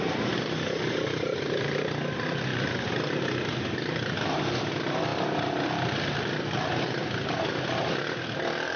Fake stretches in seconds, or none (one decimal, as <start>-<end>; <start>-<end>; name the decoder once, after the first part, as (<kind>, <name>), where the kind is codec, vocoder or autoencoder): 5.1-7.5 (vocoder, BigVGAN v2)

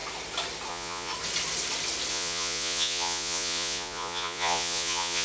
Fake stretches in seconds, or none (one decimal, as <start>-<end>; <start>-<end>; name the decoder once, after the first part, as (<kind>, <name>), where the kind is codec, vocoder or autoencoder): 0.7-1.1 (vocoder, Vocos); 2.1-5.2

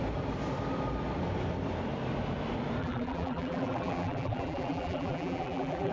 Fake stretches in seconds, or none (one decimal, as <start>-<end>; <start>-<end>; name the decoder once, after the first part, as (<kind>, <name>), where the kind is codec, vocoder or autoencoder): 2.8-5.9 (vocoder, BigVGAN v2)

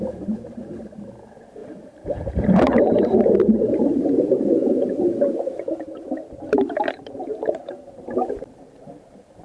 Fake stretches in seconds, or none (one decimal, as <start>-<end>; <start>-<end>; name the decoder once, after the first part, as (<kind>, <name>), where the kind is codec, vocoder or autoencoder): 0.0-9.4 (vocoder, BigVGAN v2)